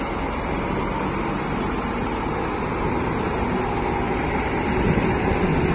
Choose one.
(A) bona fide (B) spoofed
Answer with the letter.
A